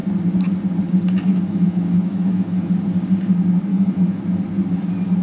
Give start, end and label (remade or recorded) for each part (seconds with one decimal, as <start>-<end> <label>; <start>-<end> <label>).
0.0-1.3 recorded; 1.3-2.7 remade; 2.7-3.7 recorded; 3.7-4.2 remade; 4.2-5.2 recorded